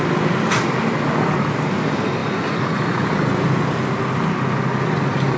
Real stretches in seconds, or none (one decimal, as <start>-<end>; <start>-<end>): 0.0-5.4